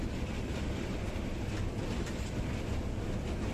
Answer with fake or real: real